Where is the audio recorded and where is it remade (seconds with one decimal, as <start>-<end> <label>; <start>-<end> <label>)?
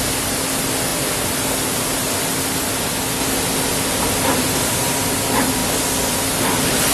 0.0-6.9 recorded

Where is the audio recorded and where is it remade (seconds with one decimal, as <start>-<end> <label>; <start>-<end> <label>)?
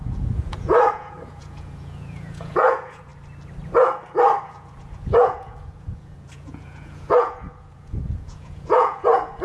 0.0-3.1 remade; 3.1-4.4 recorded; 4.4-9.4 remade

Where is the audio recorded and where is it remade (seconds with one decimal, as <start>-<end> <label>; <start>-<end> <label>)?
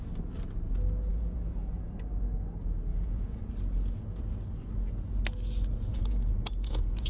0.0-1.1 recorded; 1.1-1.9 remade; 1.9-2.9 recorded; 2.9-3.5 remade; 3.5-5.9 recorded; 5.9-7.1 remade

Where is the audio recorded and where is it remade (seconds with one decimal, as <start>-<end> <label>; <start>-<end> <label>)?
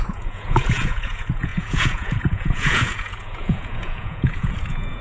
0.0-5.0 remade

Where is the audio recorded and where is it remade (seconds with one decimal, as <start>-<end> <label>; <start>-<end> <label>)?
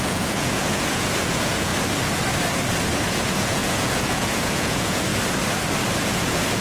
0.0-1.7 remade; 1.7-3.1 recorded; 3.1-5.1 remade; 5.1-6.0 recorded; 6.0-6.6 remade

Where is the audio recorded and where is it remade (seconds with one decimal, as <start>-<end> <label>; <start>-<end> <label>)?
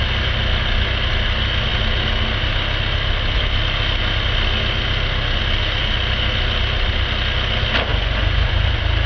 0.0-7.9 recorded; 7.9-8.7 remade; 8.7-9.1 recorded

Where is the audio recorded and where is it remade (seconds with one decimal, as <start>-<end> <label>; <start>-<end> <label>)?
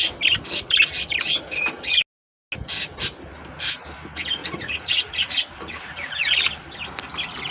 0.0-4.4 recorded; 4.4-6.5 remade; 6.5-7.5 recorded